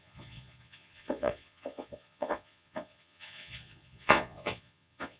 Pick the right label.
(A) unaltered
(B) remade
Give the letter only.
B